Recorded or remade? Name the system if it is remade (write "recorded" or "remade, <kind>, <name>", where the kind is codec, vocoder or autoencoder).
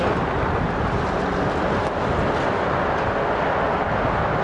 recorded